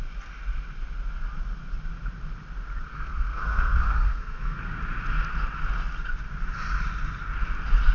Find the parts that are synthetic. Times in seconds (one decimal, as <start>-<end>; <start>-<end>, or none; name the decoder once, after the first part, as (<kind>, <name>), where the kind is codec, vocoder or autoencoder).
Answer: 2.9-4.8 (codec, SNAC)